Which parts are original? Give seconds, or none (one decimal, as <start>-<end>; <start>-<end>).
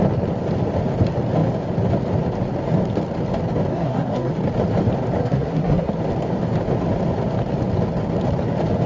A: 0.0-3.7; 4.3-5.2; 5.9-8.9